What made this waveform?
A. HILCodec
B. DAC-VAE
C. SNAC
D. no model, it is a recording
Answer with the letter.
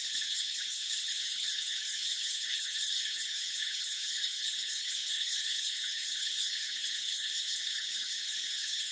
A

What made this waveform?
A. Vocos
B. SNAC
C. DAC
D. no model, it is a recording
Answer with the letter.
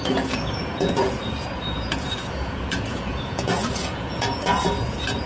A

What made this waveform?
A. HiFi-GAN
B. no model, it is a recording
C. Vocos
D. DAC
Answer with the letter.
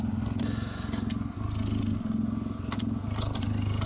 B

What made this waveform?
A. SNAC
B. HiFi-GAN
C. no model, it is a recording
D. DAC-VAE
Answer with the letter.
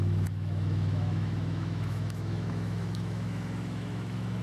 D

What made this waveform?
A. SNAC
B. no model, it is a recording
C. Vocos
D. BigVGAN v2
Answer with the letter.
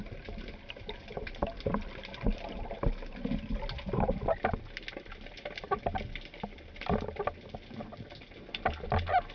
B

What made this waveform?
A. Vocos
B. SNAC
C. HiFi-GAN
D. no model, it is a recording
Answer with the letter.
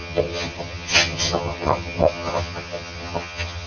C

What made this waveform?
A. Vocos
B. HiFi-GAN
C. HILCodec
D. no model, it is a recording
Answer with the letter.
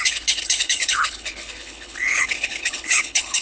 C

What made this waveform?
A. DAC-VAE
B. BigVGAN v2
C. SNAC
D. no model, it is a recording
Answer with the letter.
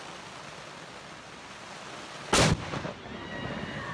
D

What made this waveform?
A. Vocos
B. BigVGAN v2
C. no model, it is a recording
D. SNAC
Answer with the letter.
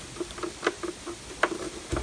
C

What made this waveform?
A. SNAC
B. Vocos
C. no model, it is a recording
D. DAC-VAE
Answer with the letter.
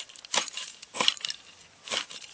C